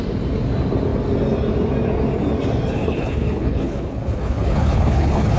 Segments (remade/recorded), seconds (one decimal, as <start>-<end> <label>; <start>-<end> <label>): 0.0-2.8 recorded; 2.8-5.4 remade